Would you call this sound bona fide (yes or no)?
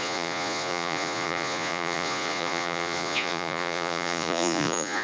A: no